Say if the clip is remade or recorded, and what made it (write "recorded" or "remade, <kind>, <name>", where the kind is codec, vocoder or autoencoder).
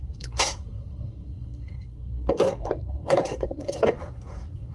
remade, codec, SNAC